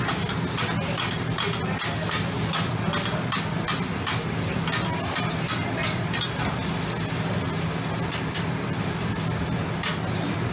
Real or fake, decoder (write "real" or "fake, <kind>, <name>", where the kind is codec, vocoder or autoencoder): real